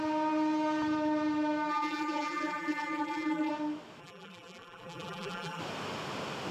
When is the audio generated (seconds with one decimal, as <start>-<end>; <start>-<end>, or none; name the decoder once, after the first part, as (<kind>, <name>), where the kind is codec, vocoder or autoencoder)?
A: 1.7-3.5 (vocoder, BigVGAN v2); 4.0-5.6